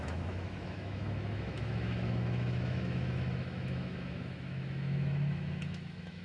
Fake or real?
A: fake